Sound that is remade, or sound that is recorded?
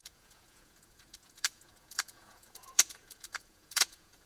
remade